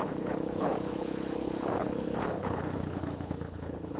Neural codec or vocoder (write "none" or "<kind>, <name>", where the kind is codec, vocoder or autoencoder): codec, HILCodec